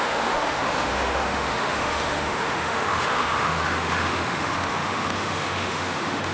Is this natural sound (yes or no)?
no